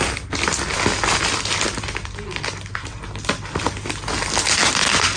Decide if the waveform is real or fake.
real